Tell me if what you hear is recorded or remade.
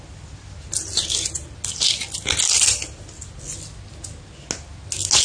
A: recorded